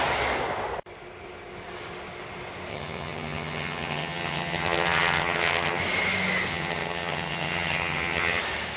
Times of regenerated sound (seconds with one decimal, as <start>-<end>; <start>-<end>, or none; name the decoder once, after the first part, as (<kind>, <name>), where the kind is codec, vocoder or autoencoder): 2.7-5.8 (vocoder, HiFi-GAN); 6.5-8.4